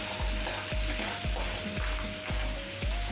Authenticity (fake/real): real